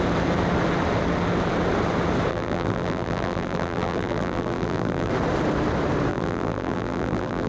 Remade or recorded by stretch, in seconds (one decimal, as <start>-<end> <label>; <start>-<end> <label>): 0.0-2.3 recorded; 2.3-5.1 remade; 5.1-6.1 recorded; 6.1-7.5 remade

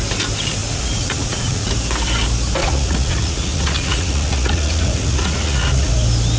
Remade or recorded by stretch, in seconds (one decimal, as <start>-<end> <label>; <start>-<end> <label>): 0.0-0.6 recorded; 0.6-1.7 remade; 1.7-2.6 recorded; 2.6-5.9 remade; 5.9-6.4 recorded